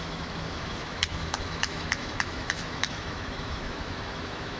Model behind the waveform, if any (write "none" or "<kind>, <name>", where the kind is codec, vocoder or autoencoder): autoencoder, DAC-VAE